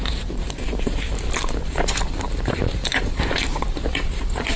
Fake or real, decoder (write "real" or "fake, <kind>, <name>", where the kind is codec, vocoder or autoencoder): fake, vocoder, BigVGAN v2